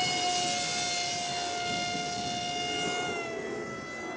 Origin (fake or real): real